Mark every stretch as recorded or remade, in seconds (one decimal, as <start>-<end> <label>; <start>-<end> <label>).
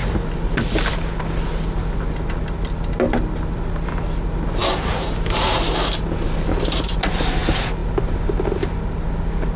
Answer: 0.0-9.6 recorded